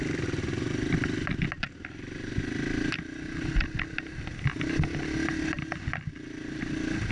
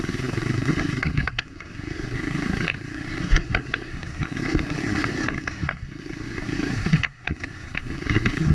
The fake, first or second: second